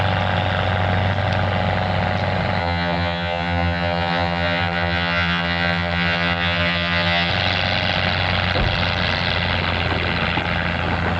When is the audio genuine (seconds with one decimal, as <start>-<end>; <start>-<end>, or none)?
0.0-2.6; 7.3-11.2